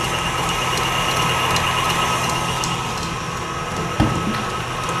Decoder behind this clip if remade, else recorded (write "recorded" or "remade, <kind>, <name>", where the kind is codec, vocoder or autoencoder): recorded